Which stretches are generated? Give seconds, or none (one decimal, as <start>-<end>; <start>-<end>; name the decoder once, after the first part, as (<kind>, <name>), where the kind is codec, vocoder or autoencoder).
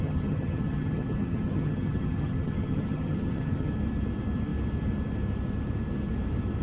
0.0-3.7 (vocoder, HiFi-GAN)